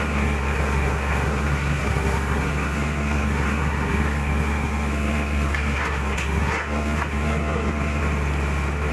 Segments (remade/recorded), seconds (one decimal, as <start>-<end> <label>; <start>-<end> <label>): 0.0-8.0 remade; 8.0-8.9 recorded